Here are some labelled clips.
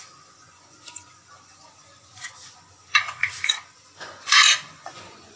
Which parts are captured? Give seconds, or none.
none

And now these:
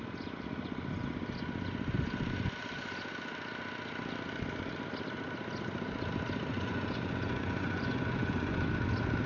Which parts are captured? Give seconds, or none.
0.0-6.5; 8.6-9.3

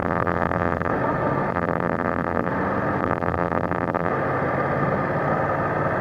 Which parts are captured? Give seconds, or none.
0.9-1.5; 2.5-3.0; 4.1-6.0

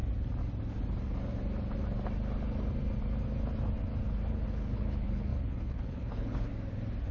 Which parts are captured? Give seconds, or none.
0.0-4.3; 6.5-7.1

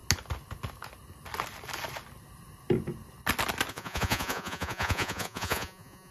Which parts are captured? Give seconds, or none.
0.0-3.7

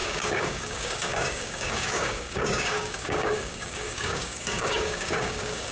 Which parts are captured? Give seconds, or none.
none

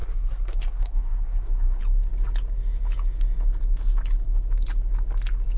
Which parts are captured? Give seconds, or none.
1.8-5.6

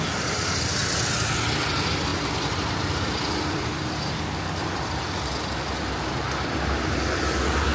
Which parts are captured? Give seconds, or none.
0.0-7.7